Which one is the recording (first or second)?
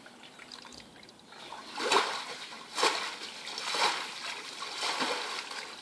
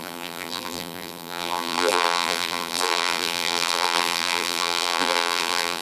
first